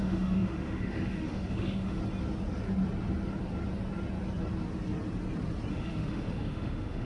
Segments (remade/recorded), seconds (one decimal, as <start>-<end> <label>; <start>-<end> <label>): 0.0-2.0 remade; 2.0-5.7 recorded; 5.7-7.0 remade